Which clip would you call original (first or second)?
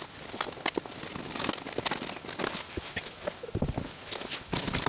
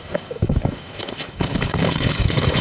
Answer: first